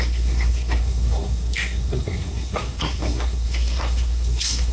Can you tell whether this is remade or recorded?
remade